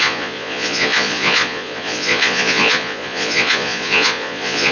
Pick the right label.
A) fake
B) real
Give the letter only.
A